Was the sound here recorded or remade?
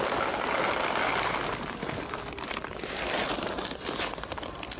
recorded